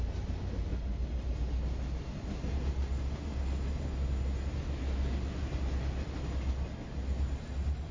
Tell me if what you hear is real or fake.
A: real